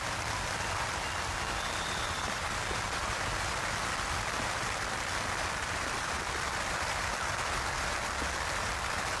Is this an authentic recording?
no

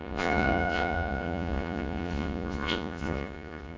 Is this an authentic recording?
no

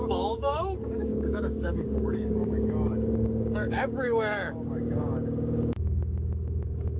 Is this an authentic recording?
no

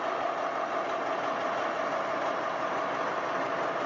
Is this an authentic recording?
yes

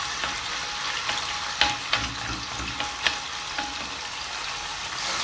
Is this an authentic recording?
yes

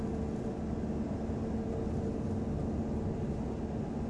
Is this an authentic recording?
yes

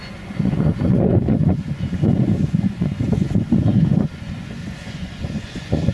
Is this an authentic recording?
no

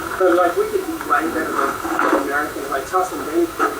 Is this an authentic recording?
no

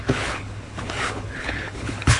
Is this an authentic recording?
no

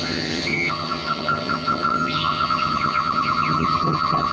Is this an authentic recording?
no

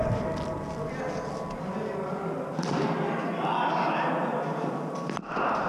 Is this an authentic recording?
yes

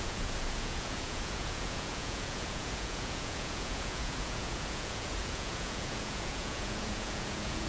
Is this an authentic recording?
no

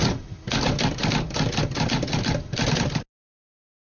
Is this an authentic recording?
yes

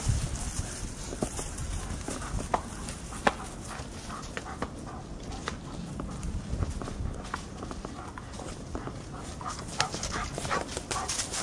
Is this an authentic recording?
yes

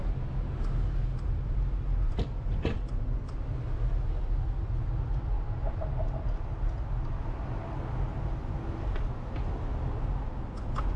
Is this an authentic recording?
yes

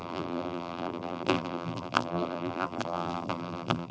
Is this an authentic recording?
no